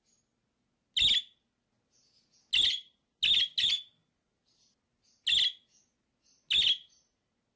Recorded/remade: recorded